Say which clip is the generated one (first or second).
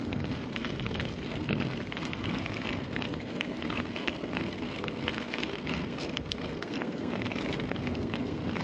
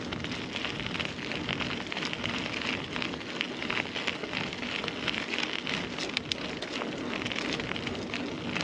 first